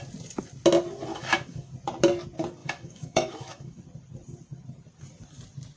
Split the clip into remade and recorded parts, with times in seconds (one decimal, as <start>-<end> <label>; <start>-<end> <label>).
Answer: 0.0-1.1 recorded; 1.1-1.7 remade; 1.7-2.6 recorded; 2.6-3.8 remade; 3.8-5.8 recorded